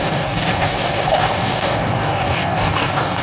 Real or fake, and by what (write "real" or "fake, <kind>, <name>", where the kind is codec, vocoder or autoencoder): fake, codec, DAC